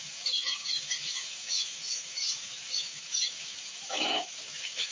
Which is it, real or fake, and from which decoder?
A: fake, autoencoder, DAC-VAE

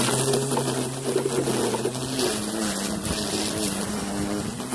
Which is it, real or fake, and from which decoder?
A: real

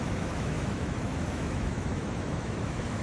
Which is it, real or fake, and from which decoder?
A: fake, autoencoder, DAC-VAE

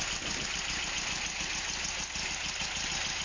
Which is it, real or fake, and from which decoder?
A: real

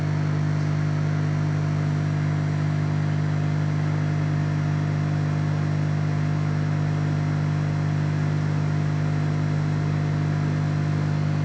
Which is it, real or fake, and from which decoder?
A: real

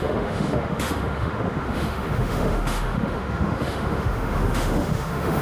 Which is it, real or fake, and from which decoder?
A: fake, autoencoder, DAC-VAE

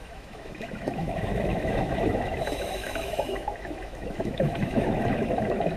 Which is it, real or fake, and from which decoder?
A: fake, autoencoder, DAC-VAE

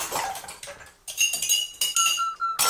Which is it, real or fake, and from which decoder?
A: real